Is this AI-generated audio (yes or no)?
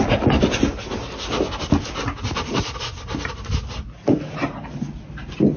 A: no